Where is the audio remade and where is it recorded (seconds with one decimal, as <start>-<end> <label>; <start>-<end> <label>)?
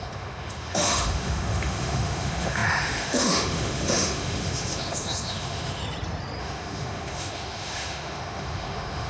0.0-5.8 remade; 5.8-6.4 recorded; 6.4-9.1 remade